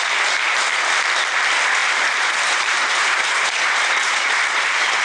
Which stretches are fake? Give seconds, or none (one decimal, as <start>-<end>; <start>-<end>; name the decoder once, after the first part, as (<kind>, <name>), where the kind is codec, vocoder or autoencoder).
1.8-5.0 (vocoder, BigVGAN v2)

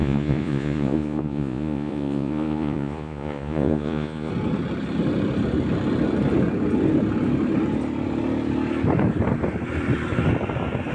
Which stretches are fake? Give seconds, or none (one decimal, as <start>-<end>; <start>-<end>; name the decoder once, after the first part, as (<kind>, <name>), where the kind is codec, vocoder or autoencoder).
0.0-4.3 (vocoder, Vocos)